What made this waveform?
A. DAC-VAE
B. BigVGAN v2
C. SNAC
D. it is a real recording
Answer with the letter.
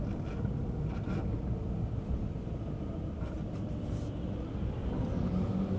D